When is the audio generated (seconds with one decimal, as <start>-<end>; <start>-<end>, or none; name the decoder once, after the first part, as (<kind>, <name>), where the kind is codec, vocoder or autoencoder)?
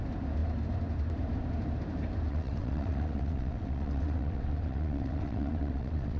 2.3-6.2 (vocoder, WaveNeXt)